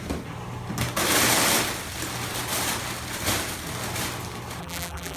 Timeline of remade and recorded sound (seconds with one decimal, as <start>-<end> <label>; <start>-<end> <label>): 0.0-4.6 recorded; 4.6-5.2 remade

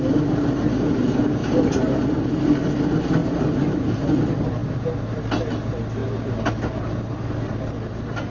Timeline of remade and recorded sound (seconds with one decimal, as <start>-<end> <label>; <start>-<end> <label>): 0.0-1.4 recorded; 1.4-2.0 remade; 2.0-4.6 recorded; 4.6-5.2 remade; 5.2-8.3 recorded

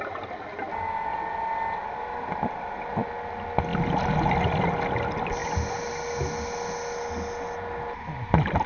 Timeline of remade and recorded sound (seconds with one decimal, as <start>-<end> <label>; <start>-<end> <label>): 0.0-8.7 recorded

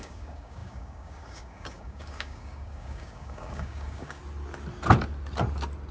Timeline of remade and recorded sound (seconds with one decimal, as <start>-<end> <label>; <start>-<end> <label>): 0.0-4.2 remade; 4.2-5.9 recorded

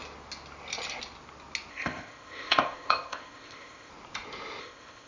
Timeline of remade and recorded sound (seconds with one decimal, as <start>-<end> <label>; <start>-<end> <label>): 0.0-1.7 recorded; 1.7-3.9 remade; 3.9-4.6 recorded; 4.6-5.1 remade

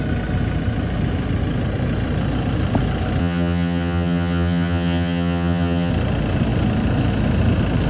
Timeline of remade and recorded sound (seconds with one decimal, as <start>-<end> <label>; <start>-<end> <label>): 0.0-3.2 recorded; 3.2-5.9 remade; 5.9-7.9 recorded

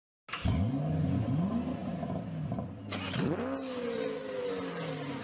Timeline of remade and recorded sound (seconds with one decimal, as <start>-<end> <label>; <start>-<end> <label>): 0.0-5.2 recorded